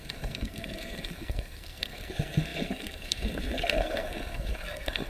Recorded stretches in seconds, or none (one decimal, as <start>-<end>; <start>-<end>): none